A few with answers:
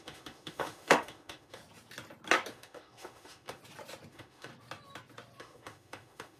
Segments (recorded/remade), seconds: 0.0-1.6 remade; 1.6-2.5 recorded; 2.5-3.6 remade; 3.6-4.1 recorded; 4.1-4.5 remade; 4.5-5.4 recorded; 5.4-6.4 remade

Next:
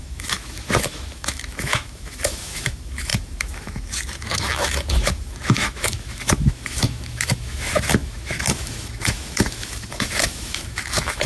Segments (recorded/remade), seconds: 0.0-11.3 remade

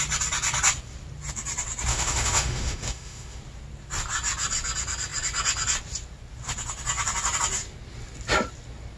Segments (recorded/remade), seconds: 0.0-1.9 recorded; 1.9-3.4 remade; 3.4-9.0 recorded

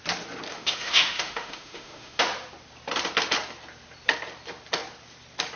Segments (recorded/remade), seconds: 0.0-0.5 recorded; 0.5-2.2 remade; 2.2-5.6 recorded

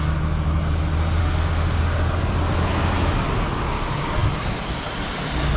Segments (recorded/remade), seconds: 0.0-1.2 recorded; 1.2-1.8 remade; 1.8-5.6 recorded

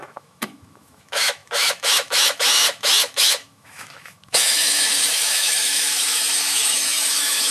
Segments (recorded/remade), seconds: 0.0-7.5 remade

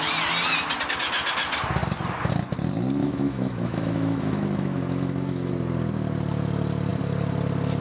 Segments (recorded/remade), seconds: 0.0-3.0 recorded; 3.0-5.5 remade; 5.5-7.8 recorded